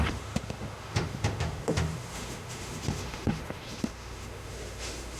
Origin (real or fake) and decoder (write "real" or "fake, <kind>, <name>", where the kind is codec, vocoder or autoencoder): fake, autoencoder, DAC-VAE